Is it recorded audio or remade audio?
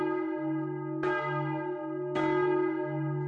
recorded